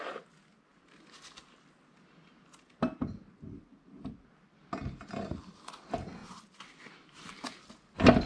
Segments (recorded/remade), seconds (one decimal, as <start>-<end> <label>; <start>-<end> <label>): 0.0-8.3 recorded